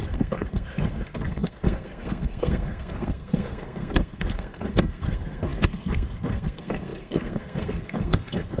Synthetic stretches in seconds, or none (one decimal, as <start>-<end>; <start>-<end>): 0.0-8.6